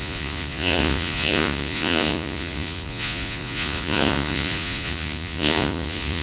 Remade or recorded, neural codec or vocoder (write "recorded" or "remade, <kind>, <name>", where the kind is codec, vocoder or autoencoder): remade, vocoder, Vocos